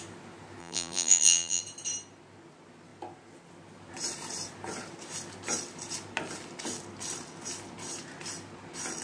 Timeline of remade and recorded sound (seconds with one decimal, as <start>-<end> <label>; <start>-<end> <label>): 0.0-0.6 recorded; 0.6-1.6 remade; 1.6-9.0 recorded

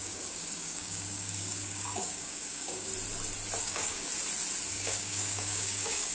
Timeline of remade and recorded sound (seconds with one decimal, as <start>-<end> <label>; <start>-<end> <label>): 0.0-2.9 remade; 2.9-3.6 recorded; 3.6-4.1 remade; 4.1-4.7 recorded; 4.7-6.1 remade

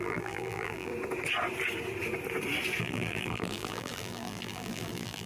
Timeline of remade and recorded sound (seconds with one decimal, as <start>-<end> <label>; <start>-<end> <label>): 0.0-0.9 remade; 0.9-2.8 recorded; 2.8-5.3 remade

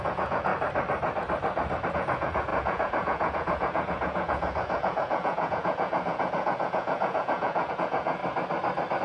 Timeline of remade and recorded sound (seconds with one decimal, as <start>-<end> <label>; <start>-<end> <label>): 0.0-0.5 remade; 0.5-1.9 recorded; 1.9-8.2 remade; 8.2-9.0 recorded